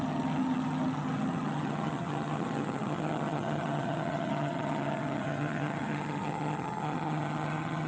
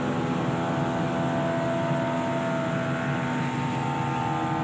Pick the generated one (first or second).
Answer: first